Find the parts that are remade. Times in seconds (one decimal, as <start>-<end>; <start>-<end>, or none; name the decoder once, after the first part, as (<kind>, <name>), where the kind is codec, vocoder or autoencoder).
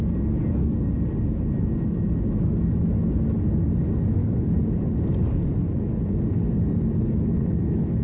0.4-0.9 (codec, DAC); 4.2-4.9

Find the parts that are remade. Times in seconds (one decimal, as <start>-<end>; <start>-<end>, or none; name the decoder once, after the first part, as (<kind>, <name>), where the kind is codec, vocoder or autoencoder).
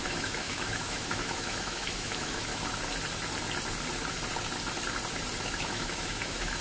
0.0-2.5 (autoencoder, DAC-VAE); 5.4-6.6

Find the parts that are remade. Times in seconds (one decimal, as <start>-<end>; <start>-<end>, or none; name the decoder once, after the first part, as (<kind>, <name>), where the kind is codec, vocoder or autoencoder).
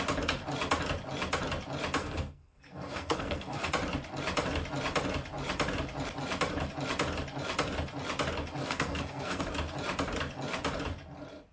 2.0-3.7 (codec, SNAC); 8.6-9.4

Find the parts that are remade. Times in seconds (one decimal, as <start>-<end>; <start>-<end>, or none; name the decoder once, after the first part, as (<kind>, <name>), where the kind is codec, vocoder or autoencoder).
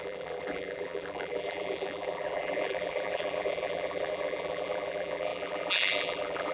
0.0-6.5 (vocoder, BigVGAN v2)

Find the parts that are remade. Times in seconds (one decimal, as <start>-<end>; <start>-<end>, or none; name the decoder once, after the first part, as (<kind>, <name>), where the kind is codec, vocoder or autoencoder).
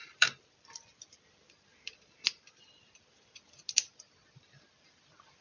0.0-1.1 (vocoder, BigVGAN v2)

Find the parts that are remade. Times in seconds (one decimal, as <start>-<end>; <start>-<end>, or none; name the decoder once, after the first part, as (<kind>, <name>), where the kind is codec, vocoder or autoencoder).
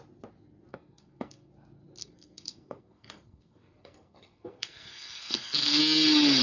0.7-1.5 (codec, SNAC); 2.0-5.8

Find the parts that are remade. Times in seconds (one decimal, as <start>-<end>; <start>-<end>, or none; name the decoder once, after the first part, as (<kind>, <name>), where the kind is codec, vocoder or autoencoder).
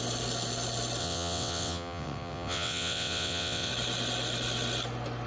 1.0-3.7 (vocoder, WaveNeXt)